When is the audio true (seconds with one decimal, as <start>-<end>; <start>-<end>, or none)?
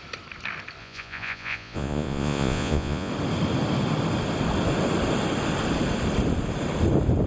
0.0-0.8; 3.1-7.3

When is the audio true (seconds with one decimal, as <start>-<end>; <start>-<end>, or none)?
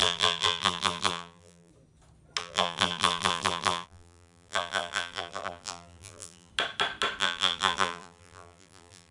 1.7-2.4; 6.5-7.2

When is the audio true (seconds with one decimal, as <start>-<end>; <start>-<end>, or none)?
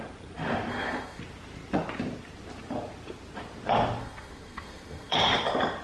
0.0-0.7; 1.2-4.0; 5.2-5.8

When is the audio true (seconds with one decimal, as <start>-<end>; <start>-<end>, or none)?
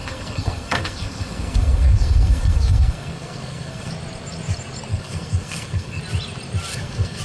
3.9-4.9; 6.0-6.7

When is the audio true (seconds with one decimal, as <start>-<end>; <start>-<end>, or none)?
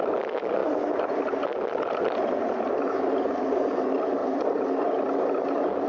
0.0-5.9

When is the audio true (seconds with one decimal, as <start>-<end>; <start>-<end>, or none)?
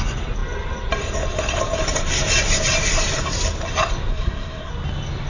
0.0-4.1; 4.7-5.3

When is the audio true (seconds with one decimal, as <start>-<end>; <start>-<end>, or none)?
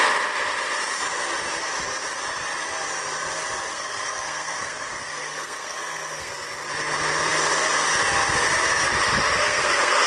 0.0-3.7; 6.3-9.4